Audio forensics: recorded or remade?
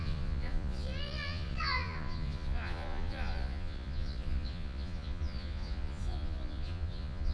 remade